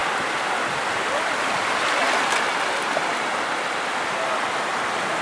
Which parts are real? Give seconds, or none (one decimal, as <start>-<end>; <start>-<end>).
0.0-5.2